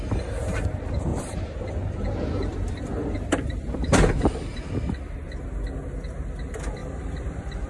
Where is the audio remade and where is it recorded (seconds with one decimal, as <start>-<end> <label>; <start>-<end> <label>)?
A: 0.0-1.1 recorded; 1.1-3.6 remade; 3.6-6.8 recorded; 6.8-7.7 remade